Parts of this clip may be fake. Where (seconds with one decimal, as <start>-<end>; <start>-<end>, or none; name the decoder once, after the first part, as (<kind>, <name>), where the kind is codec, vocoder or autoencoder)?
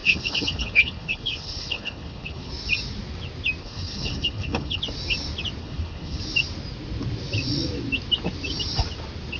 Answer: 0.0-2.5 (codec, HILCodec); 3.6-4.8; 5.6-6.2